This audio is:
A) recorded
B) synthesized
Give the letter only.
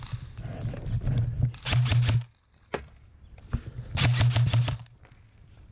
A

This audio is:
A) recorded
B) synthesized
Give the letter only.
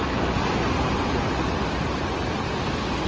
A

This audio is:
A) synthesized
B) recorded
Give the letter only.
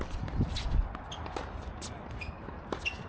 B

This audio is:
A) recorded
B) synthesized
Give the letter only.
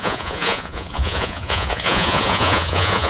B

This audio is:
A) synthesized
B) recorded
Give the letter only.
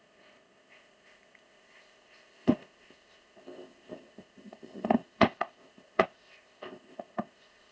A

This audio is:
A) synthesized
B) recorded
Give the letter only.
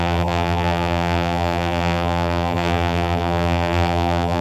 A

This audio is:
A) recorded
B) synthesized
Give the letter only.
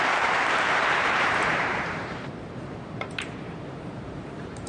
B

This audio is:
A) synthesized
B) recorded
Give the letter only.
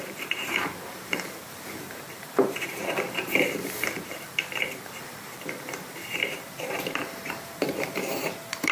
A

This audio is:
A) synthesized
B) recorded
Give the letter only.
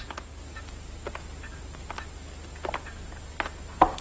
B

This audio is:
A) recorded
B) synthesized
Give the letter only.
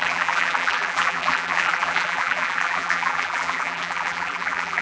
B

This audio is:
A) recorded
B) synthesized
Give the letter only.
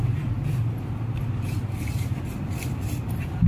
B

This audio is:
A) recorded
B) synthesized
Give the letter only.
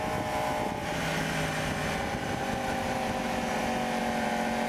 A